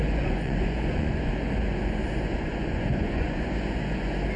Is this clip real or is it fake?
fake